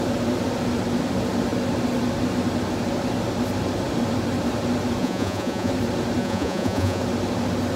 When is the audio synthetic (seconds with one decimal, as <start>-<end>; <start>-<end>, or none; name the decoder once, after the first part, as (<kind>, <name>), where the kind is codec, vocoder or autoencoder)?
5.0-5.7 (vocoder, Vocos); 6.2-7.0